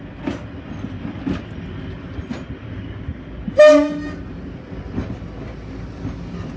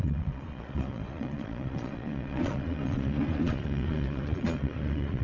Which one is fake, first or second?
second